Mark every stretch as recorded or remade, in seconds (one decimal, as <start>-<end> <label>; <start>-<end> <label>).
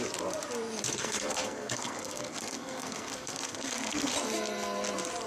0.0-0.9 recorded; 0.9-4.1 remade; 4.1-5.3 recorded